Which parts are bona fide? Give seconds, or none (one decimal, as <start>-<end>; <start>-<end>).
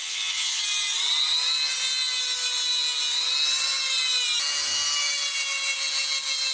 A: 0.6-6.5